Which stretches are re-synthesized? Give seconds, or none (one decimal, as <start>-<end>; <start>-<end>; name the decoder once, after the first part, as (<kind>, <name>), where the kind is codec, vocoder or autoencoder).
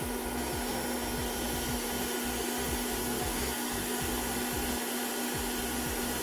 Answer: 3.0-4.0 (codec, SNAC)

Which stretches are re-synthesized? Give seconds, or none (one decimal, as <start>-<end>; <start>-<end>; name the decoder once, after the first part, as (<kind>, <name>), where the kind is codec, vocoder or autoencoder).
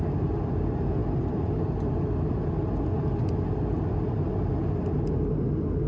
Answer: none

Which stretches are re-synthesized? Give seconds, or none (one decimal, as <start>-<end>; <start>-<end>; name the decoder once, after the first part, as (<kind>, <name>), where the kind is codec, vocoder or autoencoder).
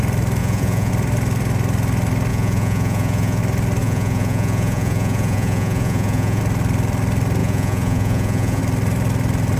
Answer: 0.4-0.9 (vocoder, Vocos); 2.3-3.4; 3.8-6.4; 7.4-8.6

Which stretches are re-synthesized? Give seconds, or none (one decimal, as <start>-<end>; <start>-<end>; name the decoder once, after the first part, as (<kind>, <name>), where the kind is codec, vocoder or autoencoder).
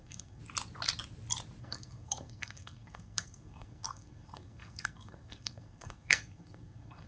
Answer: 0.0-0.4 (codec, SNAC); 1.6-7.1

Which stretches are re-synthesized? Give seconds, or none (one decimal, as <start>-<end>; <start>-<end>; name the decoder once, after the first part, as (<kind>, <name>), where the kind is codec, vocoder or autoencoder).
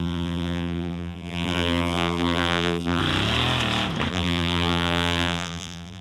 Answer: 0.0-3.0 (vocoder, BigVGAN v2); 4.1-6.0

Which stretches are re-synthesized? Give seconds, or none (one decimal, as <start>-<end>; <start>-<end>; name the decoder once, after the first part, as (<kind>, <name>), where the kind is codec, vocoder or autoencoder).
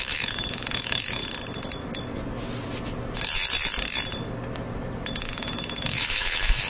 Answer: 0.0-1.2 (autoencoder, DAC-VAE); 5.2-6.7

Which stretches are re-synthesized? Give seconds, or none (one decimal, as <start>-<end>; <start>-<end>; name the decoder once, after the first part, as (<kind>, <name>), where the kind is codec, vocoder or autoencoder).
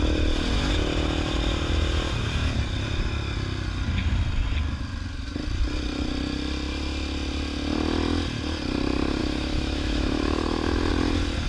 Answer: 9.2-10.9 (autoencoder, DAC-VAE)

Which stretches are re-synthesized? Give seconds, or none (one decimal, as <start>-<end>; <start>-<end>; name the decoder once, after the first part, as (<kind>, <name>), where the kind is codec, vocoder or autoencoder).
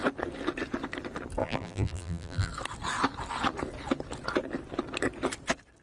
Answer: 1.4-2.5 (vocoder, BigVGAN v2)